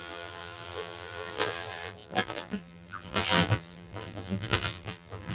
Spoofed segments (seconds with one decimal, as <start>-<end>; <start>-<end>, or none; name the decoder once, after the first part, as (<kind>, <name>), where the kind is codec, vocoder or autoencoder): 0.0-5.3 (vocoder, BigVGAN v2)